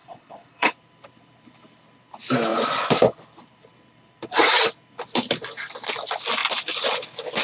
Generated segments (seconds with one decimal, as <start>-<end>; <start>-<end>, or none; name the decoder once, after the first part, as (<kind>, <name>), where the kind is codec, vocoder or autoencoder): 0.0-0.7 (codec, HILCodec)